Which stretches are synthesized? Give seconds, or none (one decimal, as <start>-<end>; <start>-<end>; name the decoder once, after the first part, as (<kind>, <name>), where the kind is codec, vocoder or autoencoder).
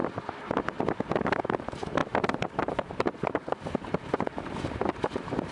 1.4-5.5 (vocoder, BigVGAN v2)